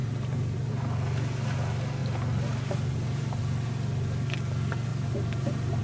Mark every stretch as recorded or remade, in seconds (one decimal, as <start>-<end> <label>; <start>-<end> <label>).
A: 0.0-0.7 remade; 0.7-2.0 recorded; 2.0-3.4 remade; 3.4-4.9 recorded; 4.9-5.8 remade